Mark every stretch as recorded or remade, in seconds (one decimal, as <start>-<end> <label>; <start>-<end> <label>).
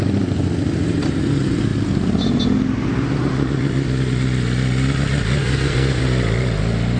0.0-5.4 recorded; 5.4-6.0 remade; 6.0-7.0 recorded